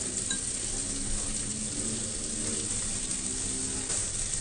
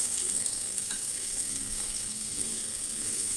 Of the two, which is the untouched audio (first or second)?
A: first